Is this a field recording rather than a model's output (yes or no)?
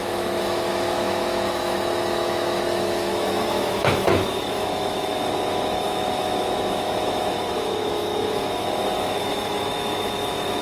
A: no